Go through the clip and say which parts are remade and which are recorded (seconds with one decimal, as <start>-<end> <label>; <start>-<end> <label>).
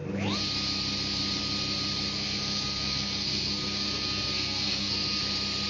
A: 0.0-2.1 recorded; 2.1-5.2 remade; 5.2-5.7 recorded